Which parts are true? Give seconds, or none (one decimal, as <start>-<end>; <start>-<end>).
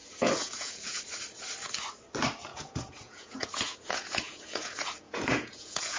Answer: 1.0-2.5